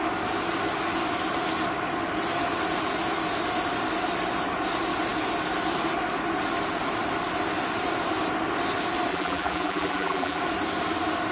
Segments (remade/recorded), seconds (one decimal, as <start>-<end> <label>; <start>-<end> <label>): 0.0-9.1 recorded; 9.1-10.4 remade; 10.4-11.3 recorded

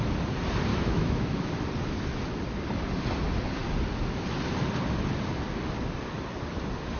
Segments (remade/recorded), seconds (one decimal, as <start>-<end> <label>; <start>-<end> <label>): 0.0-0.7 recorded; 0.7-1.4 remade; 1.4-7.0 recorded

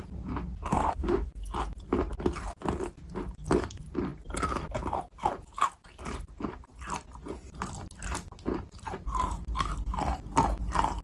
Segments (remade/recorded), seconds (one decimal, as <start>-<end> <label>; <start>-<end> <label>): 0.0-0.7 recorded; 0.7-1.3 remade; 1.3-11.0 recorded

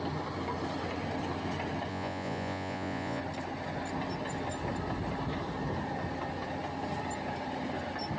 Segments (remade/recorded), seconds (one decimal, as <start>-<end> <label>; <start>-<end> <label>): 0.0-1.9 recorded; 1.9-3.2 remade; 3.2-8.2 recorded

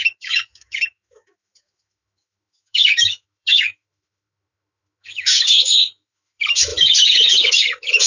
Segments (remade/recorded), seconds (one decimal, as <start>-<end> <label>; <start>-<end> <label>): 0.0-8.1 remade